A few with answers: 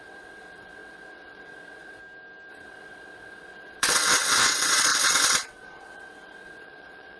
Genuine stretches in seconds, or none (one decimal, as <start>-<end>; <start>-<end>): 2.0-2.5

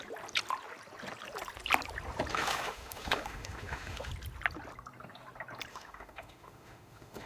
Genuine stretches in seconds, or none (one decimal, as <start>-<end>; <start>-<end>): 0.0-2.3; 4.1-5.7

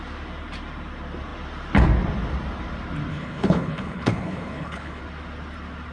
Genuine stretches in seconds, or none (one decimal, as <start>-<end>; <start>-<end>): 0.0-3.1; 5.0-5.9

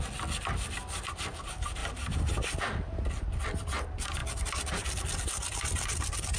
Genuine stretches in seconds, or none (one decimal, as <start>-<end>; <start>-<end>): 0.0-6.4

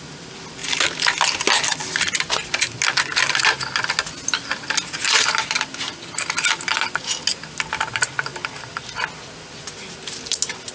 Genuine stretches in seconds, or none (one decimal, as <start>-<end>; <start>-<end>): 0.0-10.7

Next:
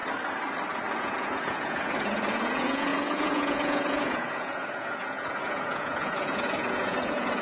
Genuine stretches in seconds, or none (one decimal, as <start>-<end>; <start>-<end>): 0.0-1.0

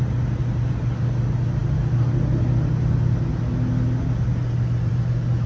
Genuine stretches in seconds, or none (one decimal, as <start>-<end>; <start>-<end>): 0.0-5.5